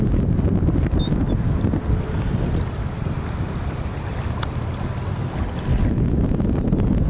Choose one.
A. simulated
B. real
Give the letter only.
B